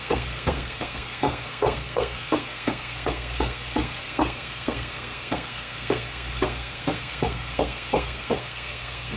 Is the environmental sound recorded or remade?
remade